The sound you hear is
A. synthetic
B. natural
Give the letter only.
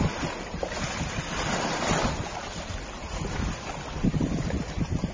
B